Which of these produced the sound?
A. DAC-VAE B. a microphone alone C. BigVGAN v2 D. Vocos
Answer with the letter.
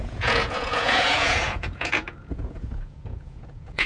D